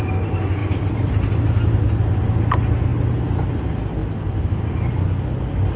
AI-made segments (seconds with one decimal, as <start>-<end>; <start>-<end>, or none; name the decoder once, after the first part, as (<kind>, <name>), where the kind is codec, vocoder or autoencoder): none